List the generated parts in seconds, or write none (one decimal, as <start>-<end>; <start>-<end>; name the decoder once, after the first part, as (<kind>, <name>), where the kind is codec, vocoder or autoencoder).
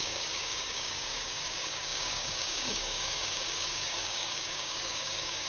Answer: 0.0-5.5 (codec, DAC)